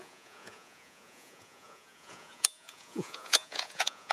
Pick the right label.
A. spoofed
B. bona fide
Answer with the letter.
A